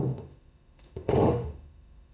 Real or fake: fake